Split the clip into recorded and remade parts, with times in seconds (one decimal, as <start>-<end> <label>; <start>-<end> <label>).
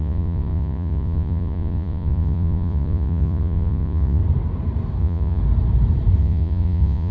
0.0-4.2 remade; 4.2-5.0 recorded; 5.0-5.4 remade; 5.4-6.2 recorded; 6.2-7.1 remade